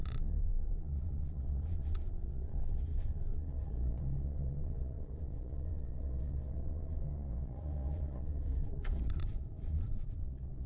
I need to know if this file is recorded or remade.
remade